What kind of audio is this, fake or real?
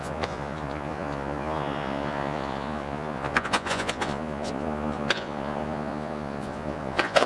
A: fake